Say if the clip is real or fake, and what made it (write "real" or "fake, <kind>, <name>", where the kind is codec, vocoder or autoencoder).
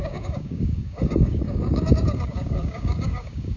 fake, codec, DAC